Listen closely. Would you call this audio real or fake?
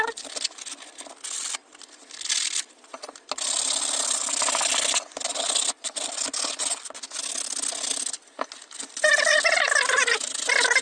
real